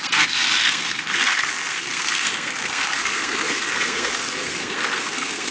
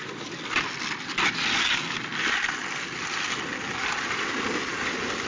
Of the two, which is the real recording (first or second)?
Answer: second